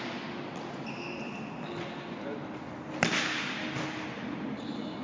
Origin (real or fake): real